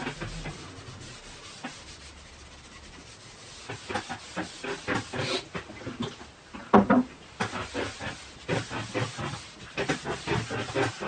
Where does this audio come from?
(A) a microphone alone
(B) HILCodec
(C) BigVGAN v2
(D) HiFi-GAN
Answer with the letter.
A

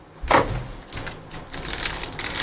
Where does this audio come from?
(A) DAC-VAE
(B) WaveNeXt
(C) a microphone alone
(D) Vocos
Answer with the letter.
C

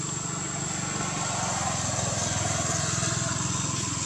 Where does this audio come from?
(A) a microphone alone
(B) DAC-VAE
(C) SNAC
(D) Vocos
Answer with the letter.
A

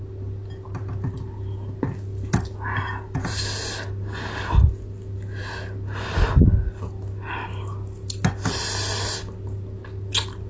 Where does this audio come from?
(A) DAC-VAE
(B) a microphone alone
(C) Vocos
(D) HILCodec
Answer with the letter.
B